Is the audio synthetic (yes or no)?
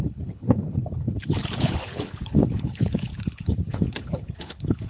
yes